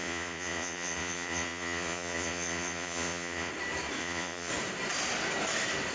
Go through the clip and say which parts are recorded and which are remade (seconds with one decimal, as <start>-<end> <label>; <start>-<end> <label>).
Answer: 0.0-3.5 remade; 3.5-4.0 recorded; 4.0-4.5 remade; 4.5-5.9 recorded